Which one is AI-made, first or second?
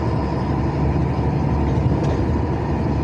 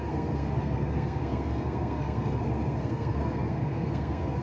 second